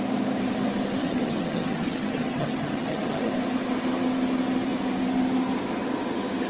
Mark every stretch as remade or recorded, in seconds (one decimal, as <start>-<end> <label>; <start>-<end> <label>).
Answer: 0.0-1.0 recorded; 1.0-3.3 remade; 3.3-6.5 recorded